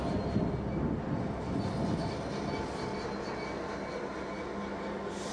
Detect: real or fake real